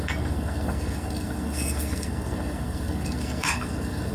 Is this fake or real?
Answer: fake